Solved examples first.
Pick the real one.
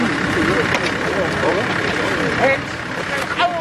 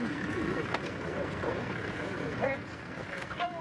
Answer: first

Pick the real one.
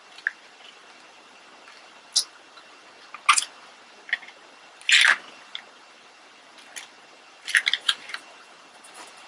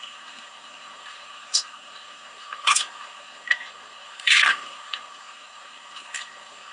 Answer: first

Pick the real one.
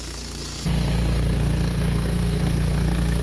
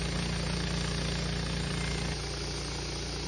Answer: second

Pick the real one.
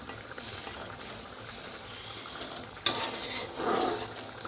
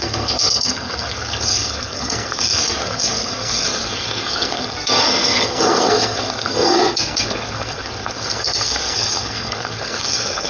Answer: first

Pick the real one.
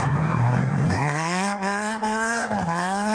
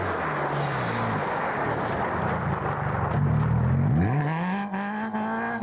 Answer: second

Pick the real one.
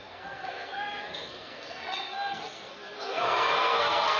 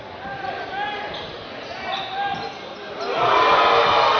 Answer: second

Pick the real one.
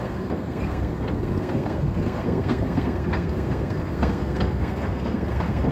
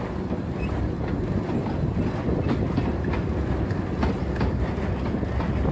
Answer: second